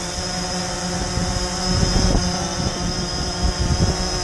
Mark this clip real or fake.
real